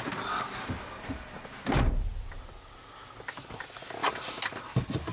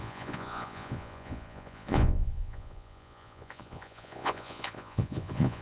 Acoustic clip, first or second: first